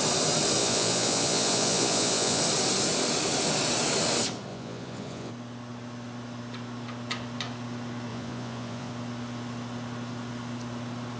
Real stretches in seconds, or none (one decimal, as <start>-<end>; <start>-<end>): 0.0-0.6; 2.4-4.5; 5.3-8.1; 8.9-11.2